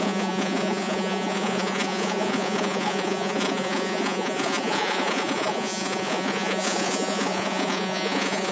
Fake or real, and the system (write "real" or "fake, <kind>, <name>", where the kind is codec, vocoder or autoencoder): fake, vocoder, Vocos